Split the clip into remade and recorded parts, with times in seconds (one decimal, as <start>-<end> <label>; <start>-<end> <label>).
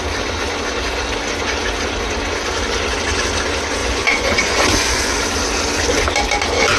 0.0-3.8 recorded; 3.8-5.1 remade; 5.1-6.8 recorded